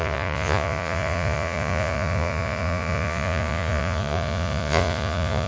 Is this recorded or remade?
remade